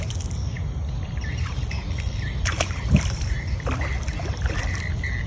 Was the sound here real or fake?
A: real